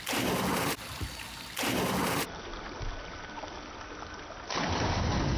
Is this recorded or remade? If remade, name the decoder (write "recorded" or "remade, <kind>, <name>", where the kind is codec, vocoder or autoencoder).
recorded